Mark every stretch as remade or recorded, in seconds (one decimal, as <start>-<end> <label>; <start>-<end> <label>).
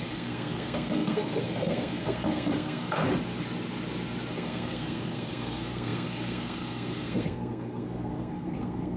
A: 0.0-3.0 remade; 3.0-4.3 recorded; 4.3-9.0 remade